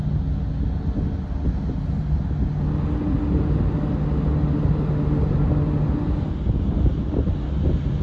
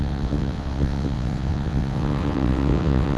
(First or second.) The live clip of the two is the first